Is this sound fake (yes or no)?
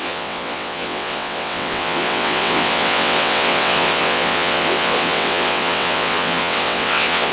yes